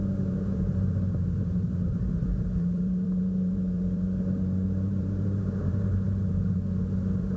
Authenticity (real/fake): fake